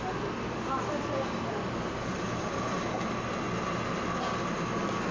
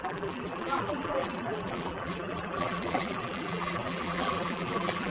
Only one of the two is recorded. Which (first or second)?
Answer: first